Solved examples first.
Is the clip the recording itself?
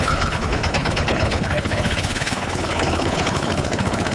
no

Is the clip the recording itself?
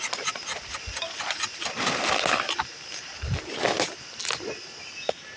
yes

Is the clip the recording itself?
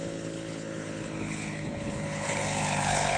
no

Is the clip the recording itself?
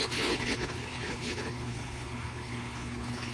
no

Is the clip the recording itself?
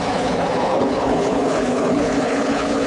no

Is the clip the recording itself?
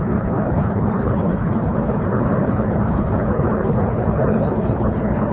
no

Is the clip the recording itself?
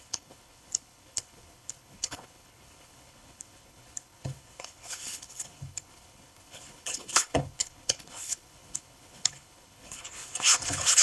no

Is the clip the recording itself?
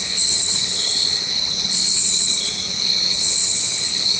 no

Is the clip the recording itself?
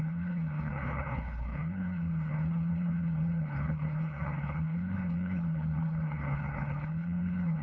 no